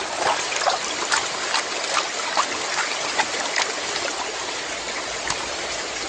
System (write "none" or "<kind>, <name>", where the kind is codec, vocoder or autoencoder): none